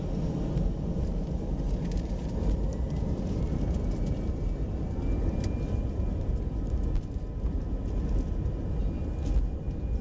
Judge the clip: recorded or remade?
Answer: recorded